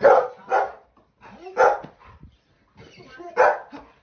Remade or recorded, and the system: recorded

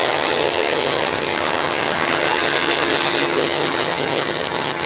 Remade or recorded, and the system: remade, vocoder, HiFi-GAN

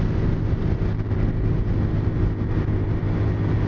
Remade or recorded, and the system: recorded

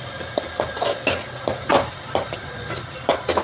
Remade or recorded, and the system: recorded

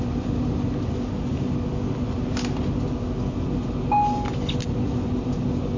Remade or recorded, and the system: recorded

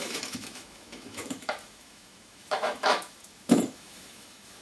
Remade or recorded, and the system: remade, autoencoder, DAC-VAE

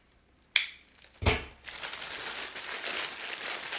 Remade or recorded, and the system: recorded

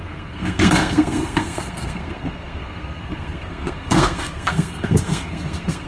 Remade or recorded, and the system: remade, codec, SNAC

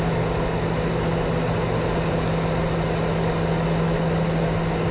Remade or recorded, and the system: recorded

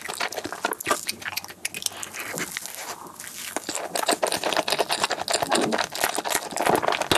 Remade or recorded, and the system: recorded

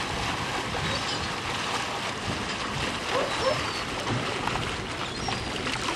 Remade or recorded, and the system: recorded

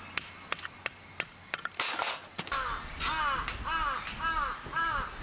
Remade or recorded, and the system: recorded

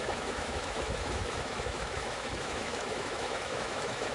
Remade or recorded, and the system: remade, autoencoder, DAC-VAE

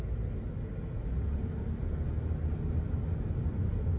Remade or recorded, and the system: recorded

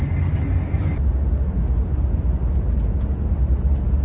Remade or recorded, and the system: recorded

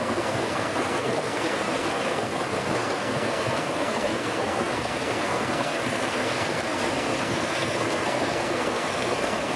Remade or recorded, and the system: remade, codec, SNAC